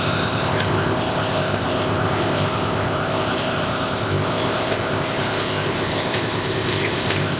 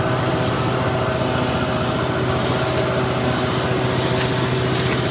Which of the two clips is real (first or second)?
second